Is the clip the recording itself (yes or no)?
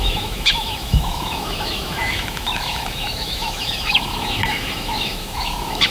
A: no